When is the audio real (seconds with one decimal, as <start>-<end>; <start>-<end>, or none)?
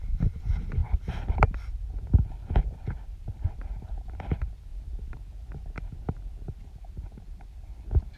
4.7-6.7